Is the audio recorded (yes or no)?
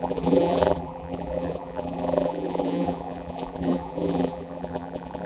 no